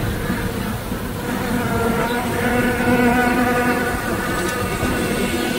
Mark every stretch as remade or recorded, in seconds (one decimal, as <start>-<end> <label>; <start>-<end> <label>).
0.0-3.2 recorded; 3.2-4.1 remade; 4.1-5.6 recorded

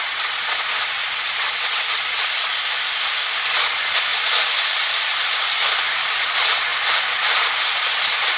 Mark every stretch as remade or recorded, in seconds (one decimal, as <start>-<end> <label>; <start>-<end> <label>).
0.0-2.5 remade; 2.5-3.5 recorded; 3.5-6.7 remade; 6.7-7.7 recorded; 7.7-8.4 remade

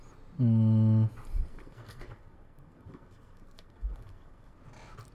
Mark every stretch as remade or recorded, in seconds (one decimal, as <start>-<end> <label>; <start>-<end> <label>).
0.0-1.5 recorded; 1.5-4.6 remade; 4.6-5.1 recorded